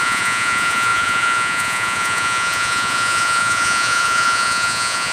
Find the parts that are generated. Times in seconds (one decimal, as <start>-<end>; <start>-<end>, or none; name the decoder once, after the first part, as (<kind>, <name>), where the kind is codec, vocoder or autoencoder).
0.0-5.1 (vocoder, Vocos)